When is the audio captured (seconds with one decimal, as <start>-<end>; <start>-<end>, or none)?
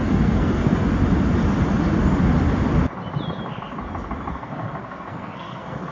0.8-4.3